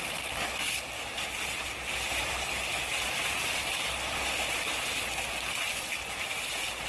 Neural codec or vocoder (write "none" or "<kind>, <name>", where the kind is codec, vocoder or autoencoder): none